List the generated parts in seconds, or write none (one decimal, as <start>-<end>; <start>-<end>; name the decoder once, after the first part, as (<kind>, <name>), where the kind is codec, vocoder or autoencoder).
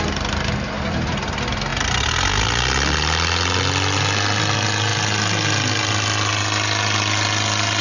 none